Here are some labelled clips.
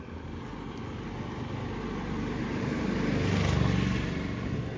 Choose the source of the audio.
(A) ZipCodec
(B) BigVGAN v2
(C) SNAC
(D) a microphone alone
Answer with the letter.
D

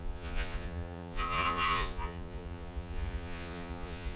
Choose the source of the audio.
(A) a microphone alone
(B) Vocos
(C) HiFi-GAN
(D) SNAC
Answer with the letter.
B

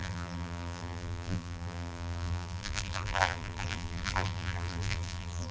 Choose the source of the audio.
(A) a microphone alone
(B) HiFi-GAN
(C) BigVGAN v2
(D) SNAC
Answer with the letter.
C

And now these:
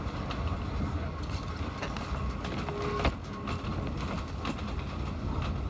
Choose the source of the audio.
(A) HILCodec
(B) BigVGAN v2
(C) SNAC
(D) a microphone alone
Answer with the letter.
D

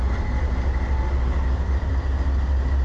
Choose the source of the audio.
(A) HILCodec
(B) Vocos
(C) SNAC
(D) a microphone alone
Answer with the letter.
D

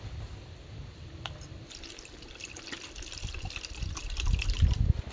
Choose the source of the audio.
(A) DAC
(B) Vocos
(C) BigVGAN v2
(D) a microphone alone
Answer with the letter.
D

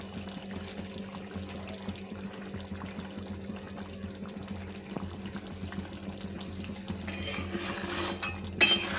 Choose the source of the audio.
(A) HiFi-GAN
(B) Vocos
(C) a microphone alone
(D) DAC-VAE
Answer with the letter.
C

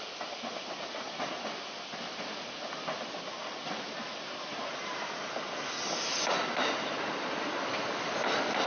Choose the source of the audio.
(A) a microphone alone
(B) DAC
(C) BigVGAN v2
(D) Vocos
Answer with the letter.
A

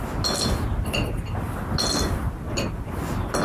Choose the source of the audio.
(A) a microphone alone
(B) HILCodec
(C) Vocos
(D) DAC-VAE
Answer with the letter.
A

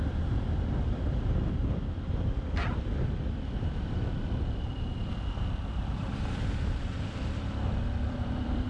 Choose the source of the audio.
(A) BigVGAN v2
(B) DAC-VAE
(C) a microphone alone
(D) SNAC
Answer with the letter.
A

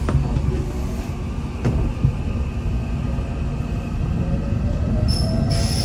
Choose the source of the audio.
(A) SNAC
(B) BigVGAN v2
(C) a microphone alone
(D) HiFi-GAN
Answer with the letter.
C